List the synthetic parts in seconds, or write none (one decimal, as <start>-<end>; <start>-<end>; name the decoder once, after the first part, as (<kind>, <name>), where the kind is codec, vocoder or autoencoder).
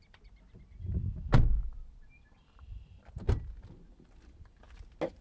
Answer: 1.6-4.7 (vocoder, BigVGAN v2)